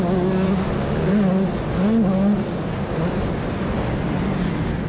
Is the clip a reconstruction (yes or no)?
no